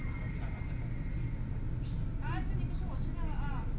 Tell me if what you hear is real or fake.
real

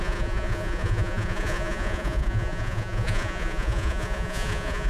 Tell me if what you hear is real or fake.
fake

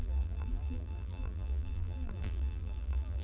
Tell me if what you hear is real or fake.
fake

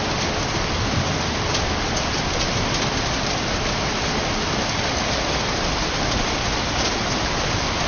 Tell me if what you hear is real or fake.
real